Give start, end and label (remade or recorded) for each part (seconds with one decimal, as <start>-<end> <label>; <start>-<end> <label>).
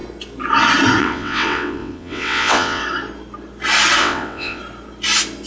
0.0-1.0 recorded; 1.0-2.8 remade; 2.8-4.0 recorded; 4.0-4.6 remade; 4.6-5.5 recorded